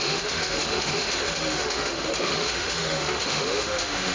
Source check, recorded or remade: remade